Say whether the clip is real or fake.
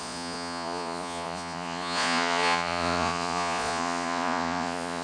fake